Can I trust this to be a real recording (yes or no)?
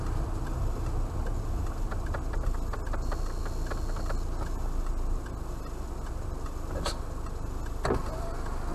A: yes